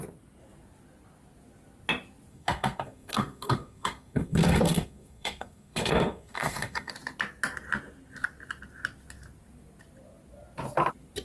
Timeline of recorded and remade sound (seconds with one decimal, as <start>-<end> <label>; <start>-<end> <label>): 0.0-2.3 recorded; 2.3-6.9 remade; 6.9-11.2 recorded